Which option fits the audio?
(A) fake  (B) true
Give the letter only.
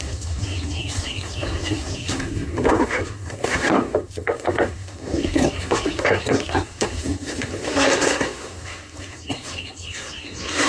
A